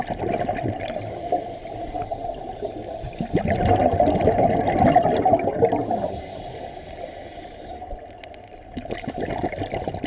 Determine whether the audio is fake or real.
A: real